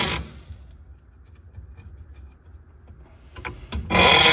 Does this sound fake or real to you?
real